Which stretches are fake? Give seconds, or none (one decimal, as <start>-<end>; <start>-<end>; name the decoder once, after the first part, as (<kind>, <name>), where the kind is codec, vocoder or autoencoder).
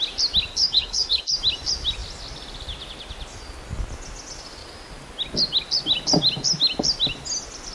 0.5-1.2 (codec, HILCodec)